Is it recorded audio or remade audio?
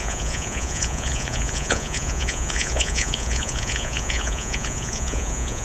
remade